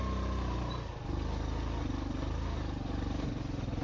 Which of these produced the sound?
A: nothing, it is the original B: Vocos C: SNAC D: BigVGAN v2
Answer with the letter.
A